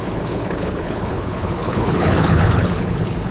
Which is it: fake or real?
fake